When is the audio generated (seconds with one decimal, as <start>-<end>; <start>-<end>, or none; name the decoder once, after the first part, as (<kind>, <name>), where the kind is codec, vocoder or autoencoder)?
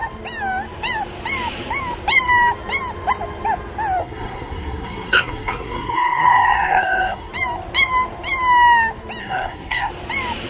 4.0-7.3 (codec, SNAC); 9.2-9.9